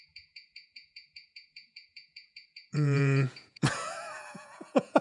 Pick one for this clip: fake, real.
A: fake